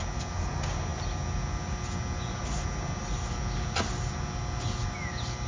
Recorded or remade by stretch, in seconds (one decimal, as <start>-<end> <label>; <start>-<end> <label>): 0.0-5.5 recorded